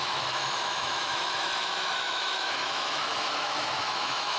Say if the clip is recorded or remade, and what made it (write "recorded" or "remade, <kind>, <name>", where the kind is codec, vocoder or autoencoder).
remade, autoencoder, DAC-VAE